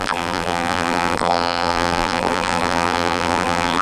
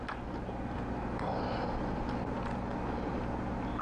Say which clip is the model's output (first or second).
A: first